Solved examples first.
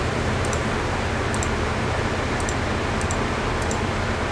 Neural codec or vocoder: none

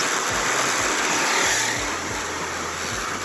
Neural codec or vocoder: none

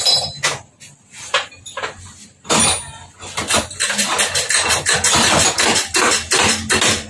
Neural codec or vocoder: none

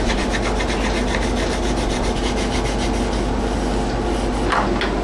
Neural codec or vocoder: none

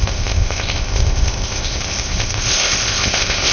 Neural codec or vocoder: codec, ZipCodec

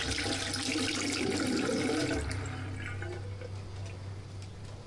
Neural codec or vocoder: none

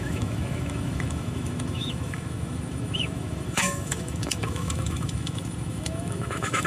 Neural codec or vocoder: autoencoder, DAC-VAE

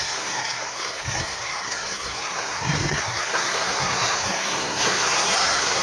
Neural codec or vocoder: codec, SNAC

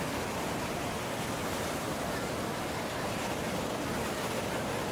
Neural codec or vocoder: none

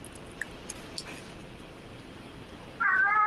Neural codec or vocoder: none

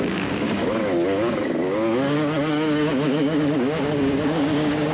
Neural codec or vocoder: codec, DAC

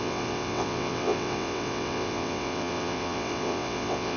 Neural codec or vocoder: vocoder, WaveNeXt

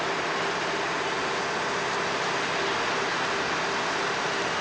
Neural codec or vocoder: none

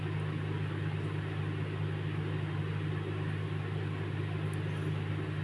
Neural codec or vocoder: none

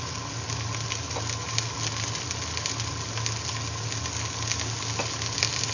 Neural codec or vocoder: none